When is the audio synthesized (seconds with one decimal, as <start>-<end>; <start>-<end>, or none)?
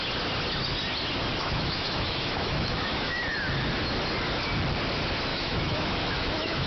1.4-3.2; 5.3-6.7